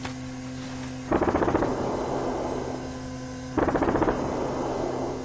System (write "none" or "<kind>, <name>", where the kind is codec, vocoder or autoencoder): none